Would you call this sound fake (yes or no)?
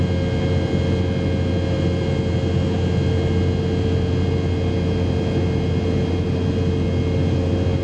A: no